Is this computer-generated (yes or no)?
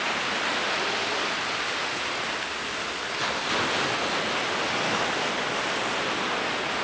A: no